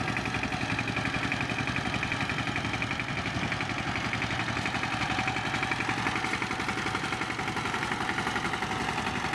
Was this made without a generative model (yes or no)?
yes